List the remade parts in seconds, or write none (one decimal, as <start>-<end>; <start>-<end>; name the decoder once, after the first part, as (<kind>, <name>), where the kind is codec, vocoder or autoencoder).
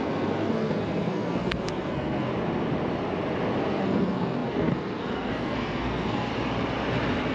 0.0-2.3 (codec, SNAC); 3.6-6.3